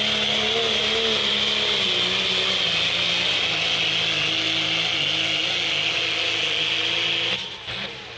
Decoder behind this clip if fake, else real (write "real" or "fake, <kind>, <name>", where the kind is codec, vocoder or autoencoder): real